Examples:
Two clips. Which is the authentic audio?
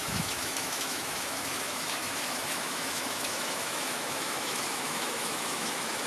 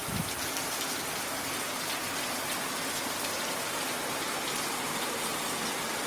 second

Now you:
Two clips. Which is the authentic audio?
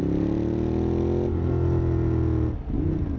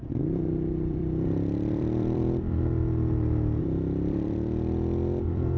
first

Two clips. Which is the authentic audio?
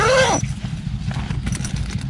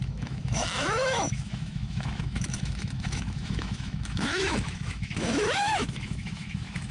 first